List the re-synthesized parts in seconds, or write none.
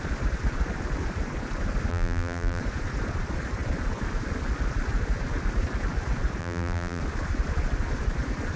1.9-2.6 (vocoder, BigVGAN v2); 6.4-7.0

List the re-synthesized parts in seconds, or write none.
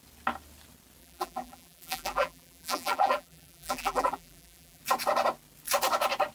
1.0-4.8 (vocoder, BigVGAN v2)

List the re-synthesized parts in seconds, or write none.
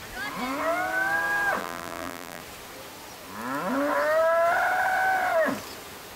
1.6-2.4 (vocoder, BigVGAN v2)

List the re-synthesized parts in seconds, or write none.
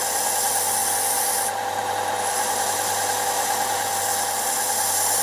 none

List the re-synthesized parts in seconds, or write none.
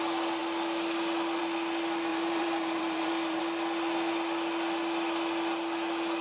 2.1-3.4 (vocoder, BigVGAN v2)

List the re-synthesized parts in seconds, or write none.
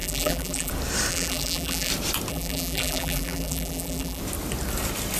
0.0-0.7 (vocoder, BigVGAN v2); 1.1-1.9; 2.3-4.2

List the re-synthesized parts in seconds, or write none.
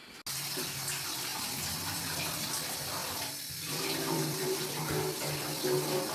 3.0-4.7 (vocoder, BigVGAN v2)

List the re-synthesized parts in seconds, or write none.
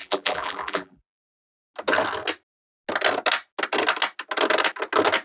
0.0-1.5 (vocoder, BigVGAN v2)